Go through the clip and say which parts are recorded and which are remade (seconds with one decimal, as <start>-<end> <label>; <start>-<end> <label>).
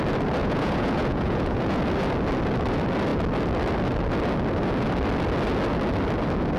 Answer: 0.0-0.4 recorded; 0.4-1.8 remade; 1.8-6.6 recorded